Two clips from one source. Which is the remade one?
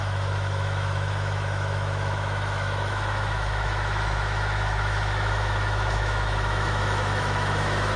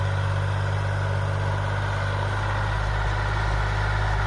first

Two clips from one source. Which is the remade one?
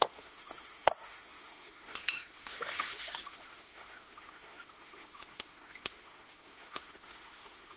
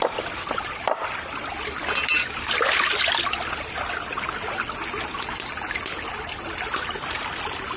first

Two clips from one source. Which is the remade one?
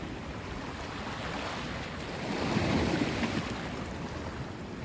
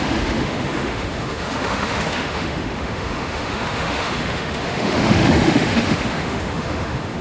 second